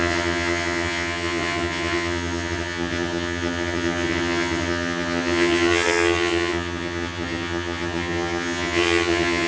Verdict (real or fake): fake